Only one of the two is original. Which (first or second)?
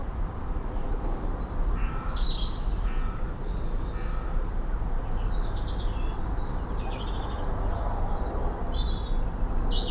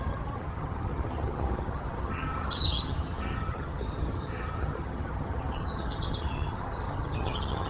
first